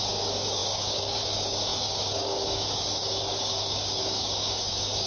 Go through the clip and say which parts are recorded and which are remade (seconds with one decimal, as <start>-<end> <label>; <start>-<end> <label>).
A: 0.0-5.1 remade